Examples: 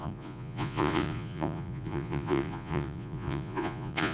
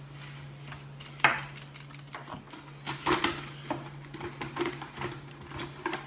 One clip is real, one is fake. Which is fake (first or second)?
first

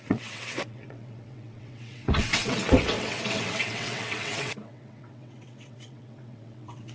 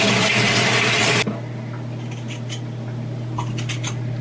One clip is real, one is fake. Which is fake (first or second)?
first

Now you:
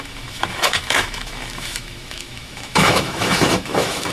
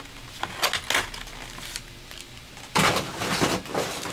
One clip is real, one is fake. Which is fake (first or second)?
first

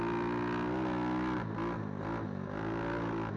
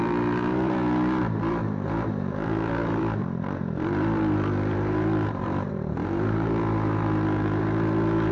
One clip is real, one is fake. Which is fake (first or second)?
second